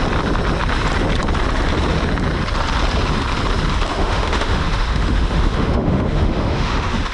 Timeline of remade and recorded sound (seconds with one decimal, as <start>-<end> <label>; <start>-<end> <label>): 0.0-3.9 recorded; 3.9-7.1 remade